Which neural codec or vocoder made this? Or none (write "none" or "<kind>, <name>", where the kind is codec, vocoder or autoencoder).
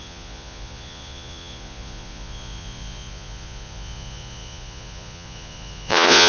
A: vocoder, Vocos